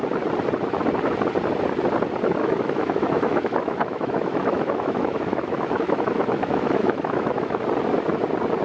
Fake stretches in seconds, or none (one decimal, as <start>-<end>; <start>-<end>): 2.4-7.6